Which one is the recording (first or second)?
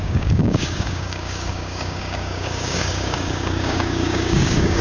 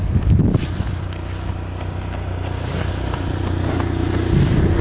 second